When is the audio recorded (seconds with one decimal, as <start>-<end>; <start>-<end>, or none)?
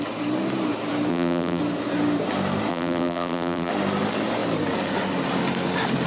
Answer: 0.0-1.1; 1.6-2.7; 3.7-6.1